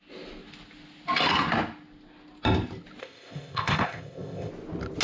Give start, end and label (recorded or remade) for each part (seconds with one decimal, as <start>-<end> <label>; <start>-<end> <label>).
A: 0.0-3.0 recorded; 3.0-4.5 remade; 4.5-5.0 recorded